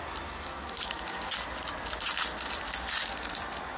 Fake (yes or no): no